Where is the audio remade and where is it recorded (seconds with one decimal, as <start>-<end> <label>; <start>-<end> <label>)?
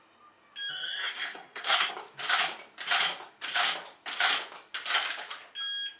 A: 0.0-0.7 recorded; 0.7-1.9 remade; 1.9-6.0 recorded